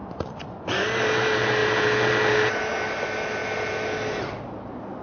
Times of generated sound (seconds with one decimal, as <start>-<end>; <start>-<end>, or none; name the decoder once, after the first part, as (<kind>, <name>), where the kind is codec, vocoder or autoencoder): 0.0-0.8 (vocoder, Vocos)